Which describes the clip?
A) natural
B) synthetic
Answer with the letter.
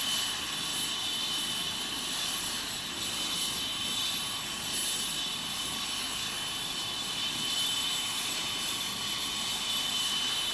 A